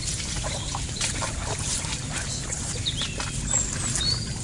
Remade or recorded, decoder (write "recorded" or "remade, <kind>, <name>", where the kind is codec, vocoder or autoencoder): recorded